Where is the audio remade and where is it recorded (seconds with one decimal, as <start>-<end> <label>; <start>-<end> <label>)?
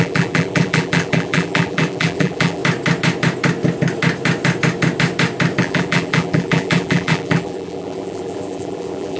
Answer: 0.0-2.6 remade; 2.6-5.6 recorded; 5.6-9.2 remade